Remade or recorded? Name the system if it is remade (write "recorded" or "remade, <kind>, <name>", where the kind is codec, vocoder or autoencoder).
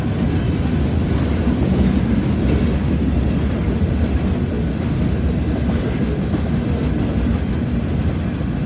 recorded